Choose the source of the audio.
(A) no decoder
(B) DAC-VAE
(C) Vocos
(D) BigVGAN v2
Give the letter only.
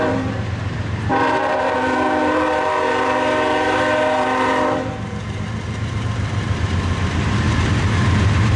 D